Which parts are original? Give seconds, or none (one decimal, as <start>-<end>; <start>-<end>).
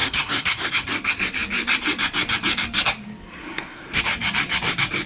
0.7-3.4; 4.0-5.1